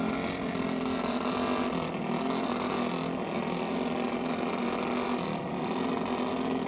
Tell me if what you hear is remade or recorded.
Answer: recorded